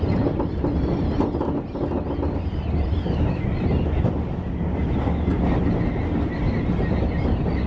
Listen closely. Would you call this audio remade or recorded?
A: recorded